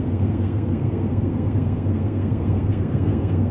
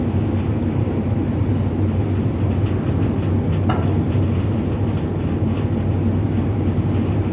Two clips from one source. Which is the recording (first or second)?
second